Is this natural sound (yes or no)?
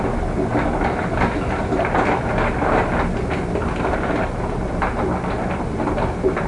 yes